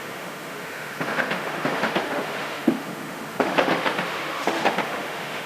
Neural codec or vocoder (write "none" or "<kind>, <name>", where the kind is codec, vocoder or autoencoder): autoencoder, DAC-VAE